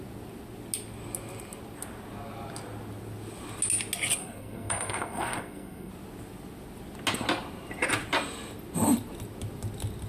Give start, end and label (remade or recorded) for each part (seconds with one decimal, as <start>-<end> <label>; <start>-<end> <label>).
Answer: 0.0-4.2 recorded; 4.2-5.9 remade; 5.9-10.1 recorded